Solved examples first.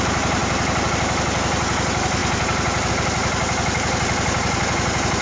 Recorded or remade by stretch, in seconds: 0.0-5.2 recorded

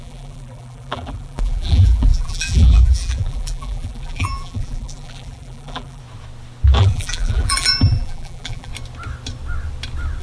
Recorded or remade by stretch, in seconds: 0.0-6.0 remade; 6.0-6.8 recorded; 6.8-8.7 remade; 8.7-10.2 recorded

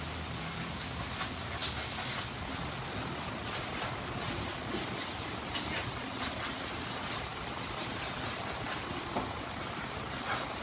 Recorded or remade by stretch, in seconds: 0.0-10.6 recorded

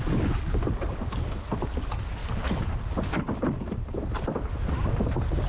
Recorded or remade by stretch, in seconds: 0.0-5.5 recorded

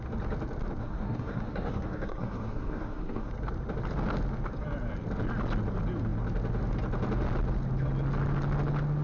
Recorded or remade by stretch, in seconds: 0.0-0.8 recorded; 0.8-3.3 remade; 3.3-9.0 recorded

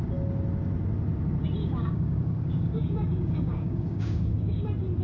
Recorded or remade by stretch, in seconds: 0.0-1.6 recorded; 1.6-4.6 remade; 4.6-5.0 recorded

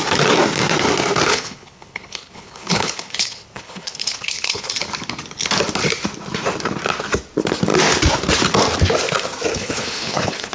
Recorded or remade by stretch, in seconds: 0.0-1.3 recorded; 1.3-4.7 remade; 4.7-9.5 recorded; 9.5-10.5 remade